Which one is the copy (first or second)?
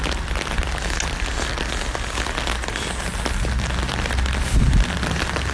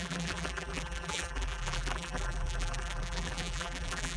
second